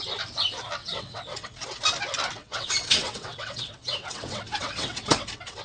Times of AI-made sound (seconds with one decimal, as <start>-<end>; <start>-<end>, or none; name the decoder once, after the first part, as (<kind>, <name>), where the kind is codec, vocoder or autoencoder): 0.8-1.8 (vocoder, WaveNeXt); 2.4-5.6